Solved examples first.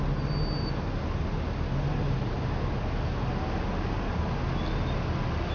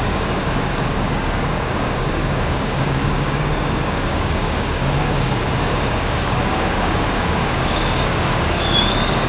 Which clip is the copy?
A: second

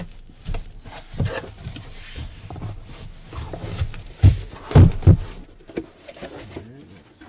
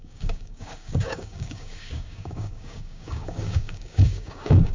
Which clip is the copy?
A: second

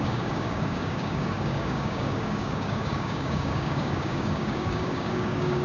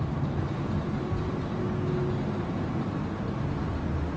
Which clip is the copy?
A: first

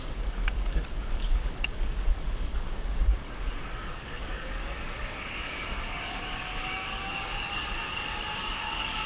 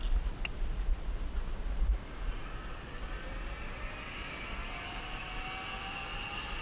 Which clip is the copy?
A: first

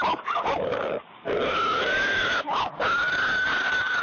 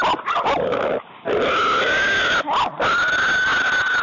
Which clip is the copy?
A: first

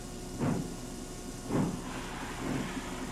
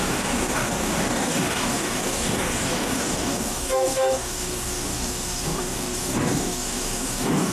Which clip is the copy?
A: second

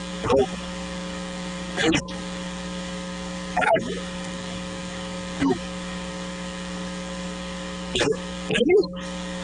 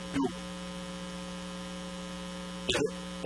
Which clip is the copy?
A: first